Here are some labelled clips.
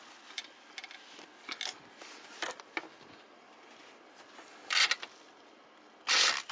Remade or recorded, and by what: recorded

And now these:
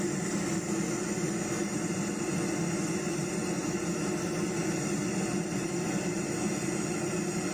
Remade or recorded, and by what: recorded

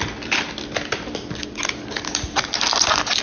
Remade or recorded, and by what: recorded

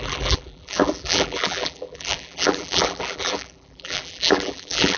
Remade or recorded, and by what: remade, vocoder, BigVGAN v2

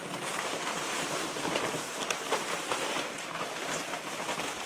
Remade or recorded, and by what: remade, vocoder, BigVGAN v2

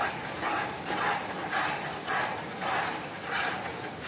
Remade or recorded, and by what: recorded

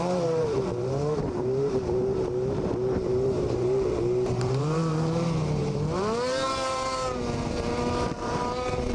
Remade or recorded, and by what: remade, vocoder, BigVGAN v2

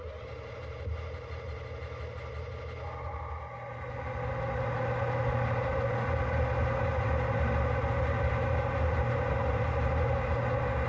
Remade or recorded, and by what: recorded